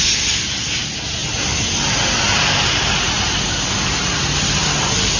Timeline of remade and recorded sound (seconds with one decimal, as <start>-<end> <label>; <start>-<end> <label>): 0.0-1.2 recorded; 1.2-3.1 remade; 3.1-5.2 recorded